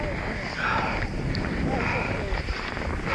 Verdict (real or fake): real